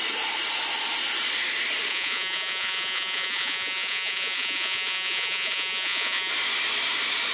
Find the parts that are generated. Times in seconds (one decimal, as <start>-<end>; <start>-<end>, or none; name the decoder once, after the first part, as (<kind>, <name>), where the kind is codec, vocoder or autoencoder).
1.9-6.3 (vocoder, Vocos)